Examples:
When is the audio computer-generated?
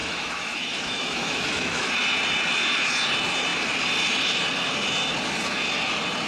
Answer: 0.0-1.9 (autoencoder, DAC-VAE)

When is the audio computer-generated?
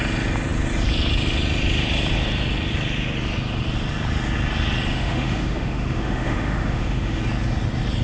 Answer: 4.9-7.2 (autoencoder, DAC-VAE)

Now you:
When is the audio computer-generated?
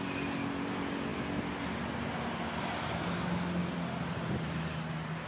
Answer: none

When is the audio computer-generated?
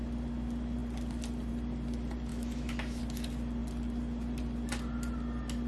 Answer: 2.3-3.0 (autoencoder, DAC-VAE)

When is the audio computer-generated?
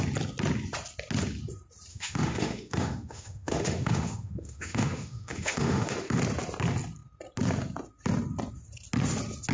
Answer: 1.9-6.2 (autoencoder, DAC-VAE)